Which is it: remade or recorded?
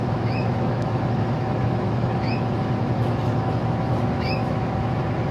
remade